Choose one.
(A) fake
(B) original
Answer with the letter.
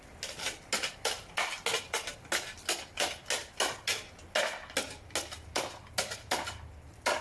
B